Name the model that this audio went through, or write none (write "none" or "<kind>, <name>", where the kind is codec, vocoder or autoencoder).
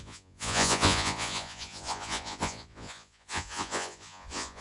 vocoder, Vocos